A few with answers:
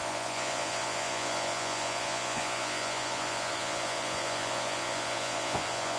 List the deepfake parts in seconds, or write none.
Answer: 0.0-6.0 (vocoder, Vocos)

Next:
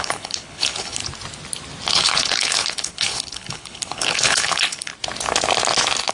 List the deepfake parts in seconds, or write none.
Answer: 0.0-1.0 (codec, HILCodec); 1.9-4.9

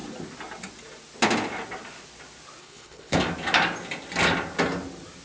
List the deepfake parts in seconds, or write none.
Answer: 2.6-3.2 (codec, HILCodec)

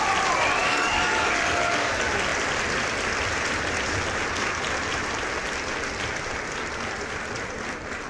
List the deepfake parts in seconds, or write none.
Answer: 0.6-1.9 (codec, DAC)

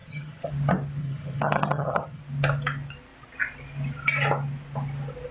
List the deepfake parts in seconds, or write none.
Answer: 0.0-0.5 (vocoder, HiFi-GAN); 1.0-2.2